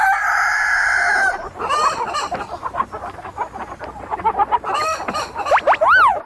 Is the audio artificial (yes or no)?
no